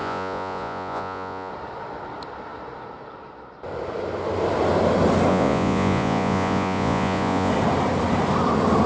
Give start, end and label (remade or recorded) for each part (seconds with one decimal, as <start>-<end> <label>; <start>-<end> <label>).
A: 0.0-1.5 remade; 1.5-5.3 recorded; 5.3-7.5 remade; 7.5-8.9 recorded